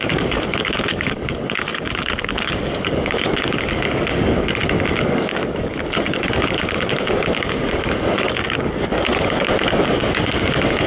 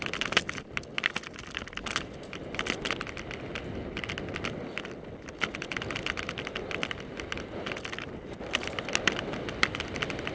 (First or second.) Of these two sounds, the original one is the second